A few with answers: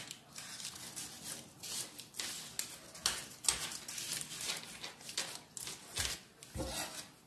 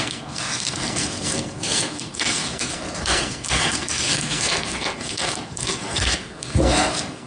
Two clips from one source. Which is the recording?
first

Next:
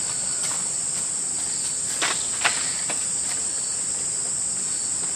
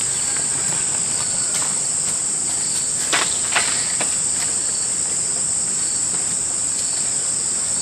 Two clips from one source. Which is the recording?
first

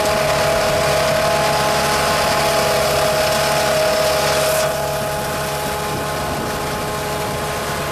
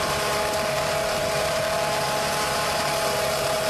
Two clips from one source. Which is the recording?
first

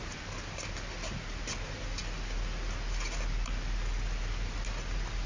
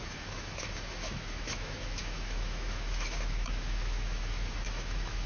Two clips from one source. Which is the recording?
first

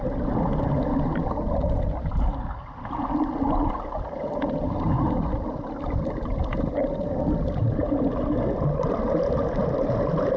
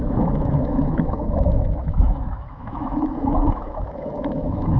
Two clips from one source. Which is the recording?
first